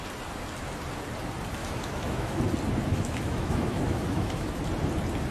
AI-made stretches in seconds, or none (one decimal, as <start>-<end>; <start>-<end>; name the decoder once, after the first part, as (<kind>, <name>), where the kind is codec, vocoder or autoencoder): 1.6-2.4 (autoencoder, DAC-VAE); 2.9-4.6